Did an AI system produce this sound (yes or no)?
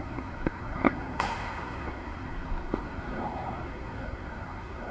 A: yes